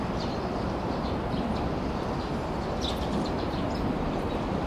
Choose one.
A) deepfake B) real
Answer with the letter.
B